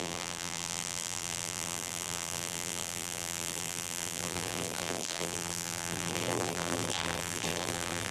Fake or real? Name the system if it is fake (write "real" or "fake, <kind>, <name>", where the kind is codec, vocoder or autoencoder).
fake, vocoder, BigVGAN v2